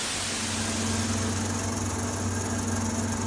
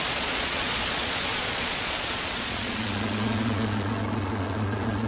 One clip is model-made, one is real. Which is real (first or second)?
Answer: first